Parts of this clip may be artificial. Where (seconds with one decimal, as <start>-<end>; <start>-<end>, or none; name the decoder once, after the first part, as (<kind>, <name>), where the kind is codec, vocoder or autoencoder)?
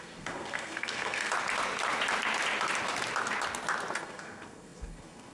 0.0-1.3 (codec, SNAC); 4.0-5.3